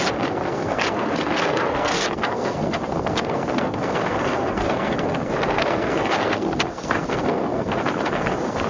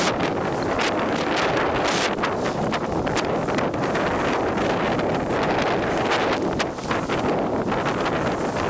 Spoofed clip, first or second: first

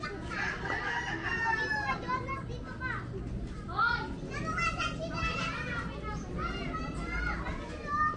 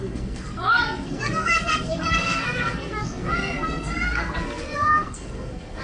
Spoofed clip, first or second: second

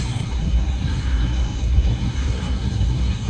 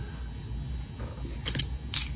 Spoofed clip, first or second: first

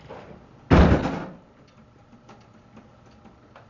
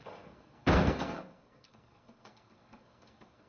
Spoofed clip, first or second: second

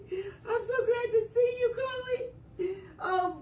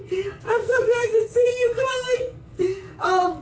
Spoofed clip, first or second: second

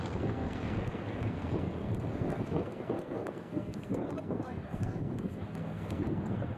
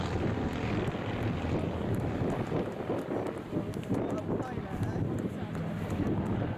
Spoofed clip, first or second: first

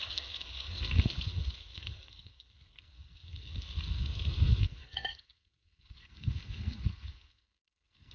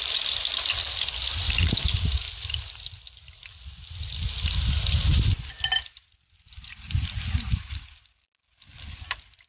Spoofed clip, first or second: first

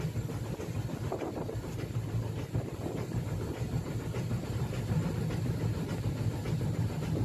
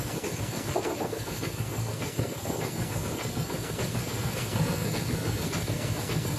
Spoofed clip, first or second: second